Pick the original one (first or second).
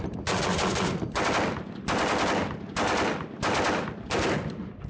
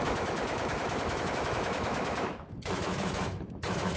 first